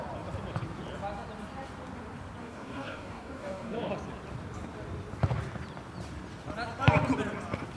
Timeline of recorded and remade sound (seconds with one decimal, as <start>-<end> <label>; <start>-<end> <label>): 0.0-2.4 recorded; 2.4-3.9 remade; 3.9-7.8 recorded